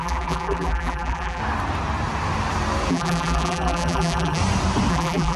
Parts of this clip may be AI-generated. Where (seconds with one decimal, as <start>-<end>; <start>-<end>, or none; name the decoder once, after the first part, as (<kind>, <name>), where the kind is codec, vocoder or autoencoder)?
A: 0.0-1.4 (vocoder, BigVGAN v2); 2.9-4.4; 4.9-5.4

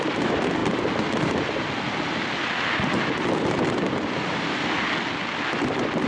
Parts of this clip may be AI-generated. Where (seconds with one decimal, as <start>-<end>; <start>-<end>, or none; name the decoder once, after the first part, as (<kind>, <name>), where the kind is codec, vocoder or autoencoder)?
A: none

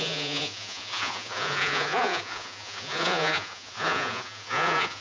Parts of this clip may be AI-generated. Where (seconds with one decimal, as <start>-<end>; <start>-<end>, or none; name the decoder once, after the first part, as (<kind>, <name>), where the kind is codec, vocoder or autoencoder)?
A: 0.0-5.0 (vocoder, Vocos)

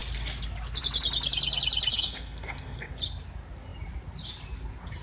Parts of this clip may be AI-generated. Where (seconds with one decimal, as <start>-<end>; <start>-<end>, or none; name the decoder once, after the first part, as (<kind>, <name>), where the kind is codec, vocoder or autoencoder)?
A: 1.9-2.9 (codec, SNAC)